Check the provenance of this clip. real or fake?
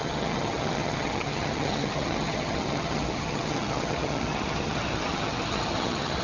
fake